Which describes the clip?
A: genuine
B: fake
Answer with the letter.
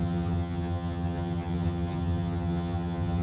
B